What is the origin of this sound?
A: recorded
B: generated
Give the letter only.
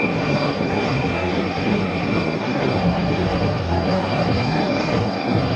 B